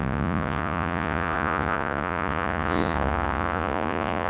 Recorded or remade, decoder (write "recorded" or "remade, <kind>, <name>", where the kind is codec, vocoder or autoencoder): remade, vocoder, Vocos